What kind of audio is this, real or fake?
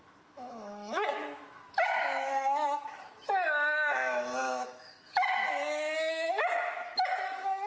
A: fake